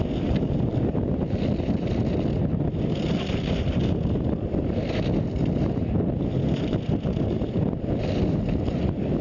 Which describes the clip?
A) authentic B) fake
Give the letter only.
A